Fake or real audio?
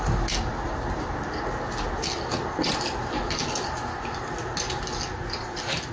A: real